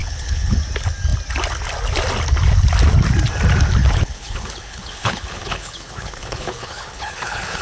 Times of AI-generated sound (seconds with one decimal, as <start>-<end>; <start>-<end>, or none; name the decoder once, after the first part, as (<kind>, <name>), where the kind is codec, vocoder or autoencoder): 0.0-0.6 (codec, HILCodec); 3.8-7.6